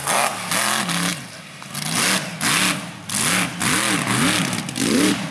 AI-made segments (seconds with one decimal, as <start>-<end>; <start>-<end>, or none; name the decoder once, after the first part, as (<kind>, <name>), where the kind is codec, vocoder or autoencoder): 0.0-0.5 (codec, SNAC)